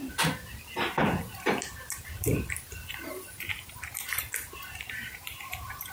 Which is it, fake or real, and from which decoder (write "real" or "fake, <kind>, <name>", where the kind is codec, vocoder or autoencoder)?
fake, vocoder, BigVGAN v2